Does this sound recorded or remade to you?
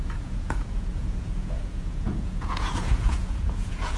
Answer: remade